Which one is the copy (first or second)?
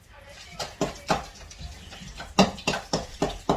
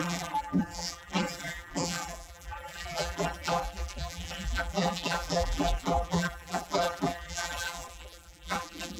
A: second